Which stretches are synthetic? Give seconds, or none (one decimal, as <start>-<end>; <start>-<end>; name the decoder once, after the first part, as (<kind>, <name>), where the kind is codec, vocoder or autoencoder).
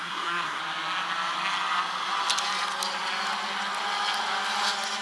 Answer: 0.0-0.6 (codec, SNAC)